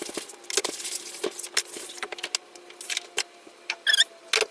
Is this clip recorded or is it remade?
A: recorded